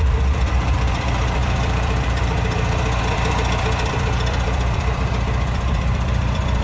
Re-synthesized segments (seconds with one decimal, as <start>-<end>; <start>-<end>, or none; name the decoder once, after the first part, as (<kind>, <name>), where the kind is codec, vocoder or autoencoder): 0.0-6.6 (vocoder, BigVGAN v2)